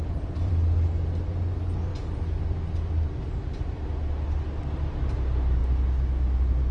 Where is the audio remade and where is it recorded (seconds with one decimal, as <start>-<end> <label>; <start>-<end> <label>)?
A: 0.0-0.5 remade; 0.5-1.9 recorded; 1.9-3.6 remade; 3.6-6.7 recorded